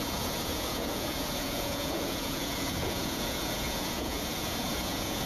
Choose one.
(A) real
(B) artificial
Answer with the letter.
B